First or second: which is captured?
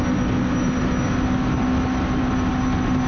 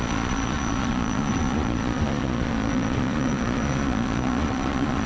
first